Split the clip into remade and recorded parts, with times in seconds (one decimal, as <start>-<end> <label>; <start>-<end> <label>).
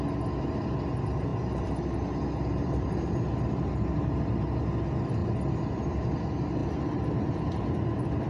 0.0-8.3 recorded